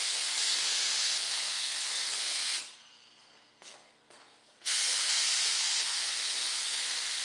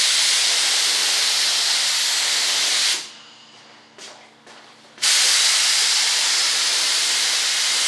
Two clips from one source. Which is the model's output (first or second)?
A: first